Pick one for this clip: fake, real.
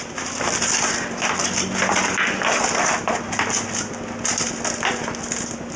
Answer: real